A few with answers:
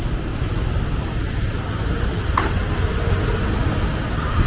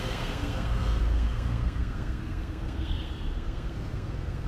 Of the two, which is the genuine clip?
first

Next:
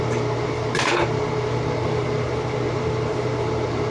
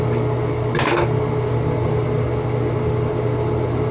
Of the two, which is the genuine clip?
second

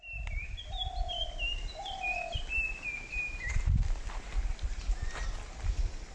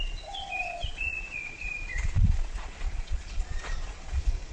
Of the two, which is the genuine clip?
first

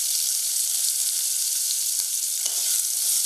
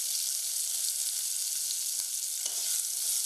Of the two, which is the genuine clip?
second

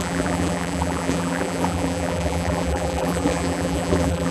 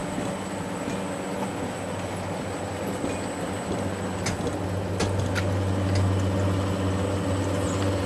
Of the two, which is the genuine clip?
second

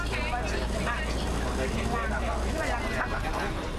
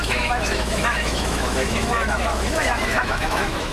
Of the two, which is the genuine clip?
first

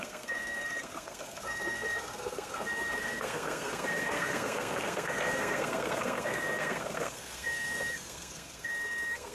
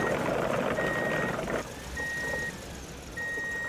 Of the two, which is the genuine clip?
second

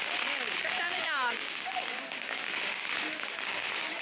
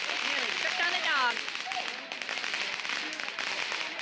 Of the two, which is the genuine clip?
second